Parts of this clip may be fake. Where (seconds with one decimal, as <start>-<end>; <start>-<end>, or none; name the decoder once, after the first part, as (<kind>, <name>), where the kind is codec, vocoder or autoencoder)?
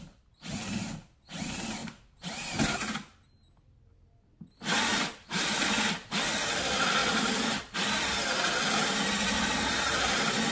4.9-5.6 (vocoder, BigVGAN v2); 7.0-7.9